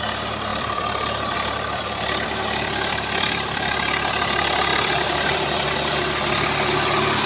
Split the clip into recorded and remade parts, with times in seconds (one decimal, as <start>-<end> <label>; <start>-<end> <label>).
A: 0.0-0.5 recorded; 0.5-3.7 remade; 3.7-4.7 recorded; 4.7-7.3 remade